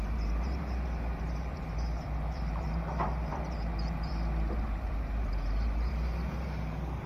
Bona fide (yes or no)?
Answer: no